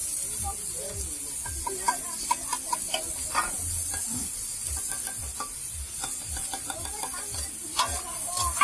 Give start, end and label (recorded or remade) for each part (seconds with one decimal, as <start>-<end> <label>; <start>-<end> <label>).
0.0-8.6 recorded